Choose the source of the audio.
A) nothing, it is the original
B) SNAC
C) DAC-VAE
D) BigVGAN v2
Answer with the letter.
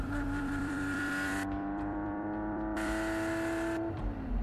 D